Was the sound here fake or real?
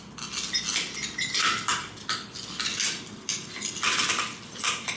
real